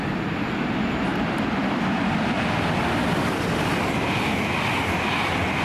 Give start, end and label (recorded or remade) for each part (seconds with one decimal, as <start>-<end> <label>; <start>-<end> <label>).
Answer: 0.0-1.1 recorded; 1.1-1.8 remade; 1.8-5.6 recorded